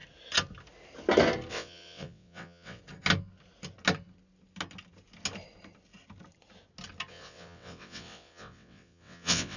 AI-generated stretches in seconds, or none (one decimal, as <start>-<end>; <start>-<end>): 1.5-2.8; 7.1-9.6